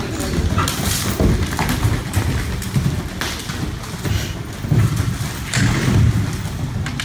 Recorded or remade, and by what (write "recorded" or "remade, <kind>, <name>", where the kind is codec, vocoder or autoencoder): recorded